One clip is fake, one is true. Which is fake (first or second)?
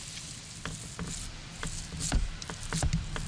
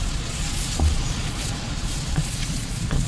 second